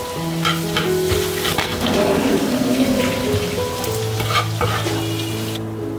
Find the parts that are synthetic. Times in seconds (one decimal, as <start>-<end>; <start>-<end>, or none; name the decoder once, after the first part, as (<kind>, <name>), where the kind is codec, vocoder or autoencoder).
1.6-3.0 (codec, SNAC)